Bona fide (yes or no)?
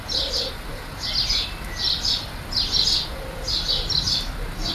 yes